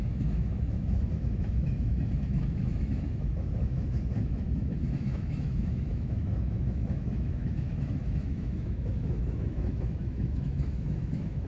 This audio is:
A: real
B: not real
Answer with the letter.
B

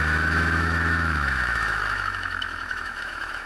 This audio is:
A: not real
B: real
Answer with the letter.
A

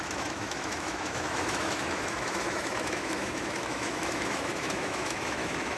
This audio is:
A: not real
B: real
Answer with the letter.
A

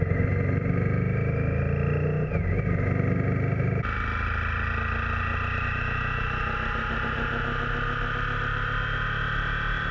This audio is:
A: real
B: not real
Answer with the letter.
A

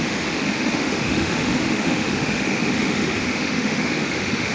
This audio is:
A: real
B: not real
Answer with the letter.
B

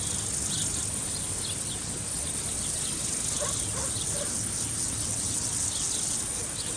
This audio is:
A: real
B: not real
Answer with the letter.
A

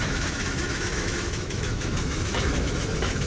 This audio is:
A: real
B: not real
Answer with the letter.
B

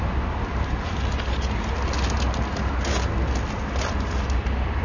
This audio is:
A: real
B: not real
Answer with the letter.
A